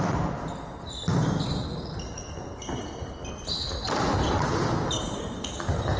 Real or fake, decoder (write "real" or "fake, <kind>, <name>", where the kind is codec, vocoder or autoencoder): real